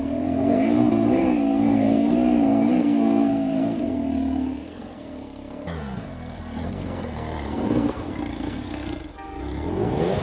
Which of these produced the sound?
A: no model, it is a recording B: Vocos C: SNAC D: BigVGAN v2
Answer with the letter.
C